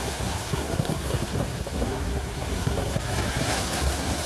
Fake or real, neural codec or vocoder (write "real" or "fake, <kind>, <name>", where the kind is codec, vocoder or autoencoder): fake, codec, SNAC